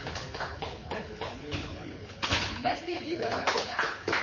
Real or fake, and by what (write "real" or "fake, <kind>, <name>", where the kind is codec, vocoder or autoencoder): fake, codec, HILCodec